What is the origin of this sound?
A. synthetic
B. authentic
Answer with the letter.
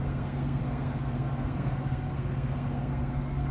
A